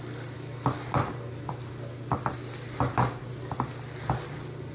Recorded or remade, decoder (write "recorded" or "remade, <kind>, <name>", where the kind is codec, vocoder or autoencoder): recorded